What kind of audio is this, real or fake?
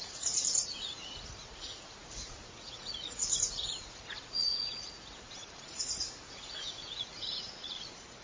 fake